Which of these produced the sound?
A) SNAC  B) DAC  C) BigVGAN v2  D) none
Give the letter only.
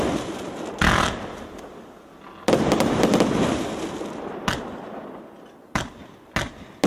D